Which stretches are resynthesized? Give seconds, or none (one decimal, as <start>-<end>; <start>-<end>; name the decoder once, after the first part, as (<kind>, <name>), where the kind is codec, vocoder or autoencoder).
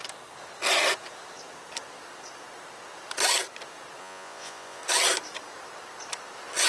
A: 4.0-4.8 (vocoder, Vocos)